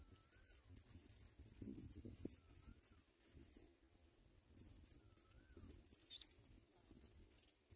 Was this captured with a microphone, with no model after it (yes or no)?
yes